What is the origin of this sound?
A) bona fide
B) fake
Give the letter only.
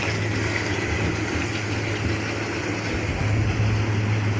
A